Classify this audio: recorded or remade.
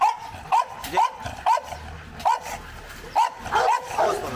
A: recorded